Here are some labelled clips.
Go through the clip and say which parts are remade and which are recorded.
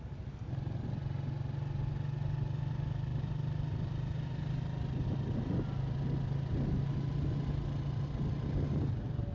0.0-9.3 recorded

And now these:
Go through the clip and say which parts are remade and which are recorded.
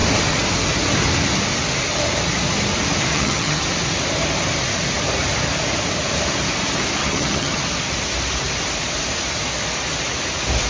0.0-3.1 recorded; 3.1-3.6 remade; 3.6-7.0 recorded; 7.0-7.6 remade; 7.6-10.7 recorded